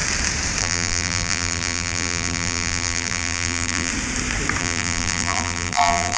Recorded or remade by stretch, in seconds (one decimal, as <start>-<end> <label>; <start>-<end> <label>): 0.0-0.6 recorded; 0.6-3.9 remade; 3.9-4.6 recorded; 4.6-6.2 remade